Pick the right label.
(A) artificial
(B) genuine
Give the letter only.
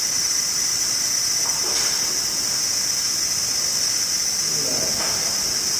B